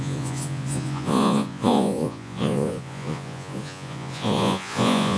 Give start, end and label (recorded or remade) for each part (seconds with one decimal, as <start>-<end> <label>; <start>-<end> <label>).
0.0-5.2 remade